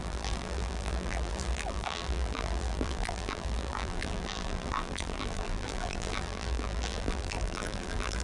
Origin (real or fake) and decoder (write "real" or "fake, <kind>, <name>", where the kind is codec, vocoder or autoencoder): fake, vocoder, BigVGAN v2